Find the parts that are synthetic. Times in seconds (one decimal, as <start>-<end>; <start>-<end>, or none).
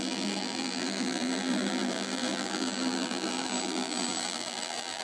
0.0-5.0